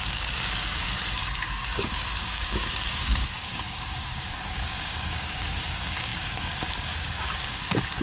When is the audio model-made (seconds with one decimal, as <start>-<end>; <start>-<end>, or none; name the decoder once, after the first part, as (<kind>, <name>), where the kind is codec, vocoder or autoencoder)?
0.0-8.0 (codec, DAC)